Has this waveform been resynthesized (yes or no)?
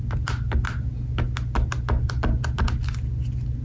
no